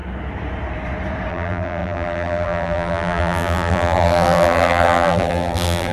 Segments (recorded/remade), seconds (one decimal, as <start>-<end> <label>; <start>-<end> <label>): 0.0-1.3 recorded; 1.3-5.9 remade